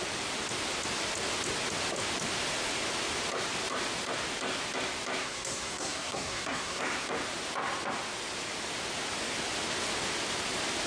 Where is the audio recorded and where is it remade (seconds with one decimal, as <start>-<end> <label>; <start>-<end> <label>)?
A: 0.0-5.2 recorded; 5.2-6.8 remade; 6.8-10.9 recorded